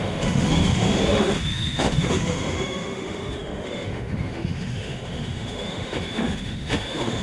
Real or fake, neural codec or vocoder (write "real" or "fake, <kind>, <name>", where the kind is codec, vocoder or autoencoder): fake, autoencoder, DAC-VAE